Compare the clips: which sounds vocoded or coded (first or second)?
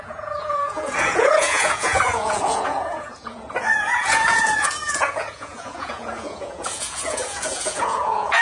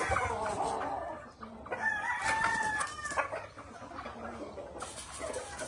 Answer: first